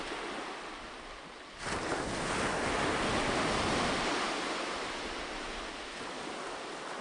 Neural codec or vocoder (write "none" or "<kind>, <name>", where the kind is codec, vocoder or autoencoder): none